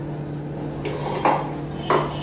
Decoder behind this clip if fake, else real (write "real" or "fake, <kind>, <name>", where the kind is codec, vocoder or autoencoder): real